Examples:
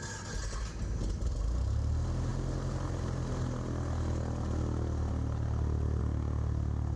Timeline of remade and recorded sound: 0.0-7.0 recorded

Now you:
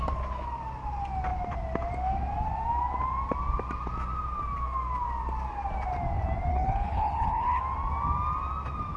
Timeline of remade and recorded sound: 0.0-6.5 recorded; 6.5-7.6 remade; 7.6-9.0 recorded